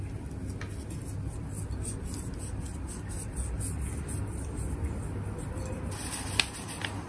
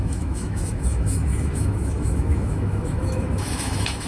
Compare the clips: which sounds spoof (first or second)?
second